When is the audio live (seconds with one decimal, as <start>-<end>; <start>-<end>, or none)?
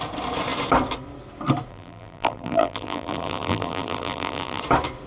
0.0-1.7; 4.6-5.1